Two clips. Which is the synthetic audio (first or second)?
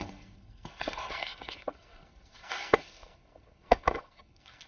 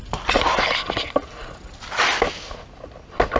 first